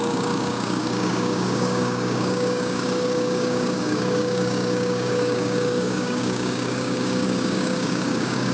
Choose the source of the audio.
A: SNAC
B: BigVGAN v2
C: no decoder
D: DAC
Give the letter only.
D